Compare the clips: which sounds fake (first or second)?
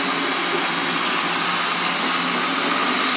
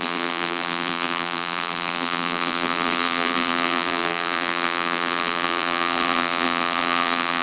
second